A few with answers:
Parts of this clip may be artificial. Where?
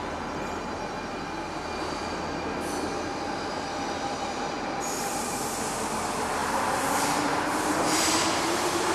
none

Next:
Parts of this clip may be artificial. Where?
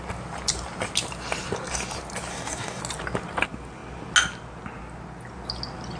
2.3-2.8 (codec, DAC)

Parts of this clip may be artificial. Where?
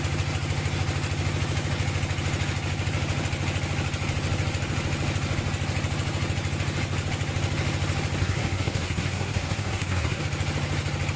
8.2-10.2 (codec, SNAC)